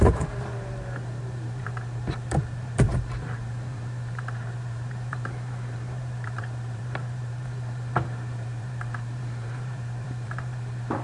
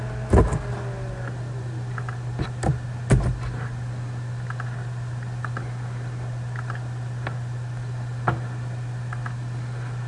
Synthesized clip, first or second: first